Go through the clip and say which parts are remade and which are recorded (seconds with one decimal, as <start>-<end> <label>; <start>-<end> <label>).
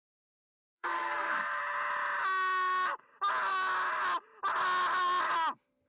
0.0-0.7 recorded; 0.7-1.6 remade; 1.6-5.9 recorded